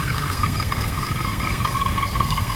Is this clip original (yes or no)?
no